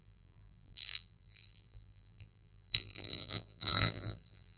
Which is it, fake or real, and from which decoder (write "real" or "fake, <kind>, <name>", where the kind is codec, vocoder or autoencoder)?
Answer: fake, vocoder, BigVGAN v2